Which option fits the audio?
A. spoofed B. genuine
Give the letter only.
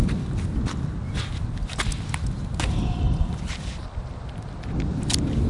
B